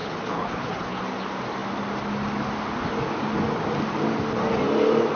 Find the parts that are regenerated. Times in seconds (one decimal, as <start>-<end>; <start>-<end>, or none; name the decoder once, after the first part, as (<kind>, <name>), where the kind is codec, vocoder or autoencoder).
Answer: 0.0-1.0 (codec, HILCodec)

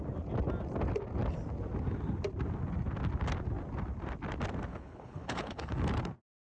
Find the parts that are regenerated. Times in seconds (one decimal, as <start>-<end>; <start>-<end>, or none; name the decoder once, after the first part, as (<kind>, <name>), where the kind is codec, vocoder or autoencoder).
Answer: 4.7-5.7 (codec, HILCodec)

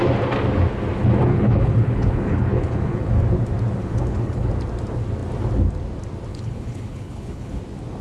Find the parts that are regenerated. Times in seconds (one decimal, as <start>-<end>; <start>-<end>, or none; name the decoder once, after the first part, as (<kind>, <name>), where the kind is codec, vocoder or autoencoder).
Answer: 1.3-3.1 (codec, HILCodec); 3.8-4.5; 6.3-7.6

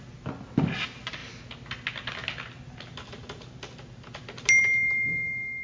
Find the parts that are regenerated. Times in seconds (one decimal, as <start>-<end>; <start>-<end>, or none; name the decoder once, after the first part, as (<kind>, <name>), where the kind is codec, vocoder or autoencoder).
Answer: none

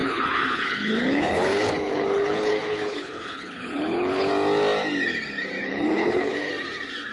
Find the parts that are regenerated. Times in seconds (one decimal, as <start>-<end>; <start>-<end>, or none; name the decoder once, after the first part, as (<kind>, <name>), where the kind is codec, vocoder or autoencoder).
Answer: 0.0-4.3 (codec, HILCodec); 5.6-6.5

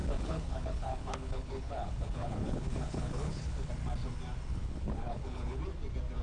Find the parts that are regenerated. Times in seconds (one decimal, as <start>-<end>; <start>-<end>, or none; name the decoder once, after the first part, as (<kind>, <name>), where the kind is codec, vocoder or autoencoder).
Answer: 0.0-3.7 (codec, HILCodec); 4.5-5.6

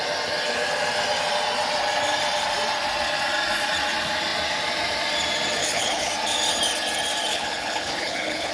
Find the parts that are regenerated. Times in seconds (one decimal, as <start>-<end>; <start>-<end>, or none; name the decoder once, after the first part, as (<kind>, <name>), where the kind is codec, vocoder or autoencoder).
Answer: 5.6-6.1 (codec, HILCodec); 7.3-8.5

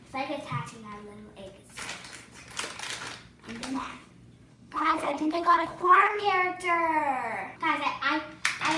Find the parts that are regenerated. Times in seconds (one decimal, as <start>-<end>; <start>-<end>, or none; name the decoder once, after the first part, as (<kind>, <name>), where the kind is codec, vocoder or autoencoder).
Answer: 3.6-4.1 (codec, HILCodec); 4.5-6.2